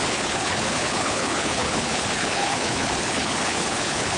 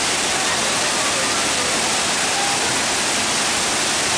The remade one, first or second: first